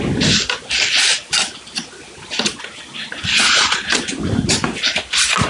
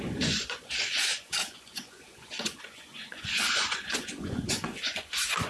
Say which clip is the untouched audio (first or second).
first